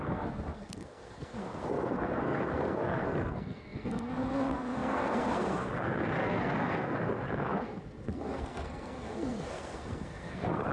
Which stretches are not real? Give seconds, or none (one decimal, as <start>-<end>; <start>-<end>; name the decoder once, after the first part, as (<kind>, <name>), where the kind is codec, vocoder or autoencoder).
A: 0.0-10.7 (codec, SNAC)